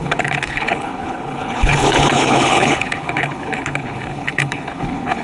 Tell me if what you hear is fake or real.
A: fake